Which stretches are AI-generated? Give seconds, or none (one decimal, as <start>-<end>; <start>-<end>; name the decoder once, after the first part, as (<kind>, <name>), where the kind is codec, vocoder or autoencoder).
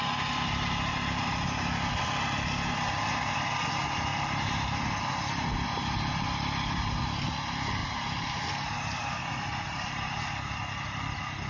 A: 0.9-1.7 (vocoder, BigVGAN v2); 4.1-5.0; 7.8-8.5; 9.5-10.2